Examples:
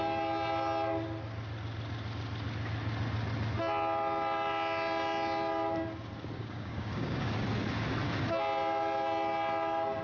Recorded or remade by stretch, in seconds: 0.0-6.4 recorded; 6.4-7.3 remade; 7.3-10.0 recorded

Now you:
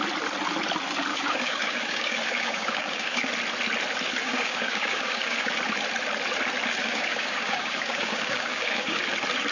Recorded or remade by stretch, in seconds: 0.0-1.1 recorded; 1.1-3.3 remade; 3.3-4.2 recorded; 4.2-5.5 remade; 5.5-6.8 recorded; 6.8-9.0 remade; 9.0-9.5 recorded

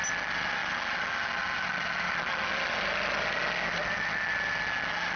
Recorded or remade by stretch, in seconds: 0.0-5.2 recorded